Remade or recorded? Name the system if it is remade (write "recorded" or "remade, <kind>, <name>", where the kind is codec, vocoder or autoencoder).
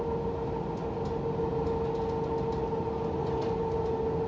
recorded